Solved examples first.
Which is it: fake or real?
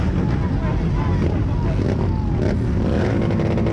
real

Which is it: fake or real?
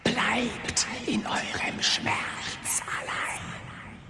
real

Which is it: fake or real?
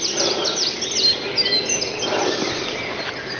real